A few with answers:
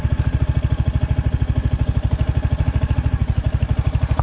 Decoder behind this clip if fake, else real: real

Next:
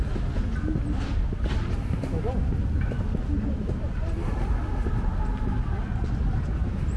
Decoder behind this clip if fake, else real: real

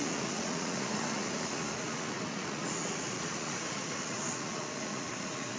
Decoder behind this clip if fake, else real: fake, vocoder, Vocos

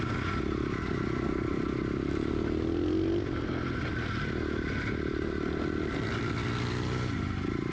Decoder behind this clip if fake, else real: real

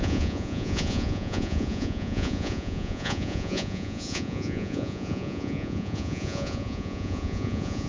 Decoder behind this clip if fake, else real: fake, vocoder, Vocos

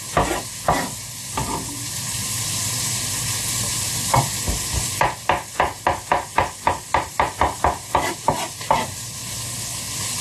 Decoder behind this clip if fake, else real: real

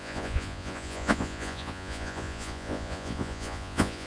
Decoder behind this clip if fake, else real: fake, vocoder, Vocos